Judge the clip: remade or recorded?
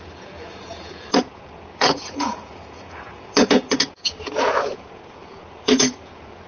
remade